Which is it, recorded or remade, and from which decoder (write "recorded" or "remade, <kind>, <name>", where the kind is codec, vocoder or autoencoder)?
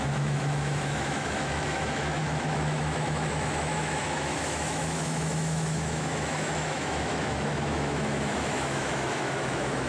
remade, autoencoder, DAC-VAE